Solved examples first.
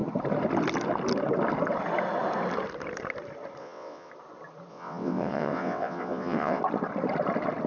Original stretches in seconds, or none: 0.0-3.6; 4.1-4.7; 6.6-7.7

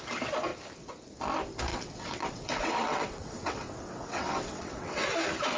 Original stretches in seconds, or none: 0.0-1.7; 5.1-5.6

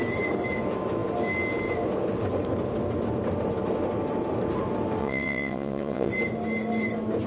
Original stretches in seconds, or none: 0.0-5.0; 6.1-7.3

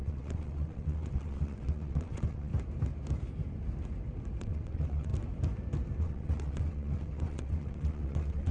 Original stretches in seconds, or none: 2.5-4.4; 5.1-6.0

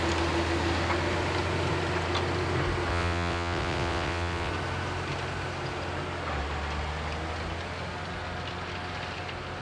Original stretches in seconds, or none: 0.0-2.9; 4.5-9.6